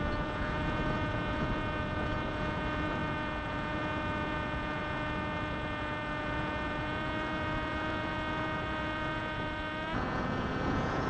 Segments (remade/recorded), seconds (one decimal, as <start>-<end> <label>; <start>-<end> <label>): 0.0-11.1 remade